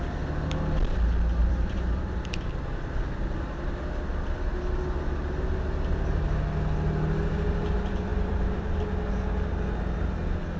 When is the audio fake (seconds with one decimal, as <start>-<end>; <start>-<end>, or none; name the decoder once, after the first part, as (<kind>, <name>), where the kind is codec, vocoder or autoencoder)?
1.4-2.4 (vocoder, BigVGAN v2); 8.1-8.7